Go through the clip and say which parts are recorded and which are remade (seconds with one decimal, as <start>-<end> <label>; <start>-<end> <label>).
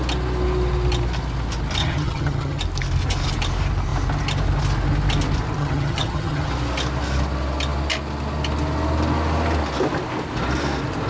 0.0-1.8 recorded; 1.8-2.6 remade; 2.6-5.6 recorded; 5.6-6.5 remade; 6.5-11.1 recorded